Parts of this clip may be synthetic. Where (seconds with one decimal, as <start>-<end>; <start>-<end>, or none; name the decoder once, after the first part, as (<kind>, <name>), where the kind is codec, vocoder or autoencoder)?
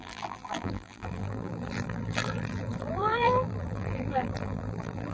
0.0-5.1 (vocoder, BigVGAN v2)